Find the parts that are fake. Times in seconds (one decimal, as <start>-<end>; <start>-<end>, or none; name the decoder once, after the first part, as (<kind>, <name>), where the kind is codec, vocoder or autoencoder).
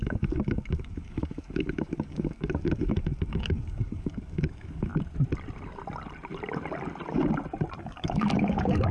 0.0-4.9 (codec, DAC); 7.8-8.9